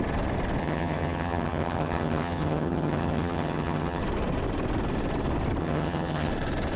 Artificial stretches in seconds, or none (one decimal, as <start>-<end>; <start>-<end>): 0.6-4.0; 5.6-6.3